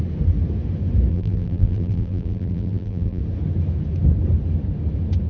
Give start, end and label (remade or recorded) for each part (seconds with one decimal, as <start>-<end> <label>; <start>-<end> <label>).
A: 0.0-1.1 recorded; 1.1-3.2 remade; 3.2-5.3 recorded